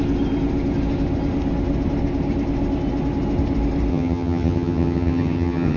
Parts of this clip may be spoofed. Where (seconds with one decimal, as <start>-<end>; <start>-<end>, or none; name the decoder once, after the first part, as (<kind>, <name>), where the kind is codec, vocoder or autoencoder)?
3.9-5.8 (vocoder, HiFi-GAN)